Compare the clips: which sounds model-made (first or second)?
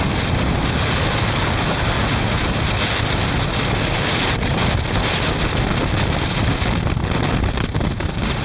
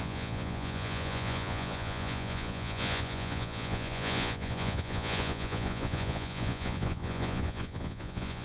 second